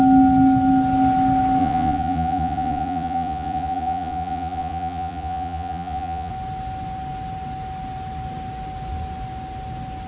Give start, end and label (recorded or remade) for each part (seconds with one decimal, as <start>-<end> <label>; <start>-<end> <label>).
0.0-1.6 recorded; 1.6-6.3 remade; 6.3-10.1 recorded